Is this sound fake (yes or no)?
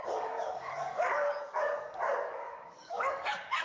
yes